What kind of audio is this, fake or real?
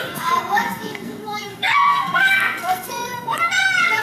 fake